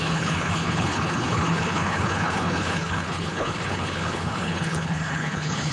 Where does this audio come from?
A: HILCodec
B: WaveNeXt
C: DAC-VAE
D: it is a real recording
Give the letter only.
A